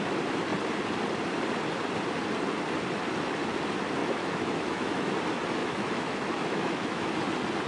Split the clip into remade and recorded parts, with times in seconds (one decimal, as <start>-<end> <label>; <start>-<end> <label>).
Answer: 0.0-4.0 recorded; 4.0-5.1 remade; 5.1-5.6 recorded; 5.6-7.1 remade; 7.1-7.7 recorded